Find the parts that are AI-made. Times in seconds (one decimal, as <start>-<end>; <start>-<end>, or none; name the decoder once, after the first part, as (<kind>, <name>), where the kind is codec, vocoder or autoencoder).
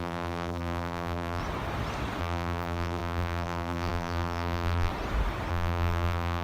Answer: 0.0-1.4 (vocoder, BigVGAN v2); 2.2-4.9; 5.5-6.4